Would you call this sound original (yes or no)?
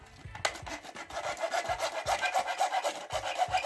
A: yes